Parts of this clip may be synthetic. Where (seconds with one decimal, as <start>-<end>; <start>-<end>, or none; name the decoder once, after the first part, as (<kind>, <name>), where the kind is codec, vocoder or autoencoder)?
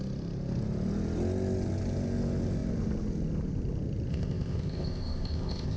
4.1-5.8 (codec, ZipCodec)